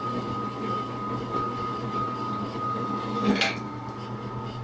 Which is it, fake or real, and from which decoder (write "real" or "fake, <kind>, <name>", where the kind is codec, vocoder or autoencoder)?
real